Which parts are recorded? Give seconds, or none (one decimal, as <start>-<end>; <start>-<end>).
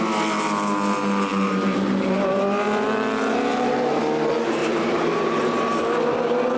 0.0-1.3; 2.3-3.5; 4.0-4.6; 5.2-6.6